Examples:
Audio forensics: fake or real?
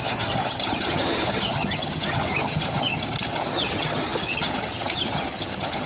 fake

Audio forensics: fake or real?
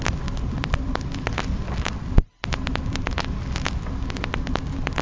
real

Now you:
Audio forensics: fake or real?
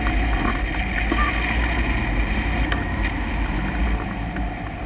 real